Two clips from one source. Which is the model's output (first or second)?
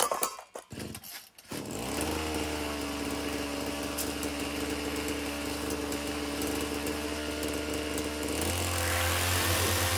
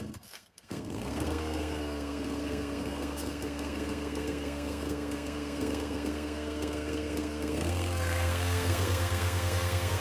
second